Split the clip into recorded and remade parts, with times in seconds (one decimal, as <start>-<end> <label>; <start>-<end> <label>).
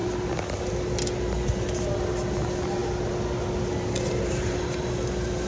0.0-5.5 recorded